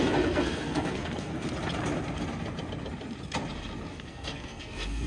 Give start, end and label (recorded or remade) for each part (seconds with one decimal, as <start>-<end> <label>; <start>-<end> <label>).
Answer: 0.0-1.3 remade; 1.3-3.9 recorded; 3.9-5.1 remade